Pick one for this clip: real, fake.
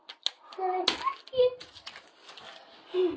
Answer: real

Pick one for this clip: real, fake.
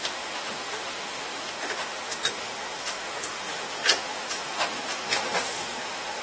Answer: fake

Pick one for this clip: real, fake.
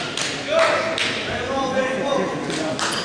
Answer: real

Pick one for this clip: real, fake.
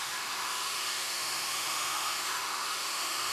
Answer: fake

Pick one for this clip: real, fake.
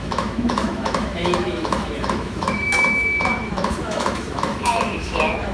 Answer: fake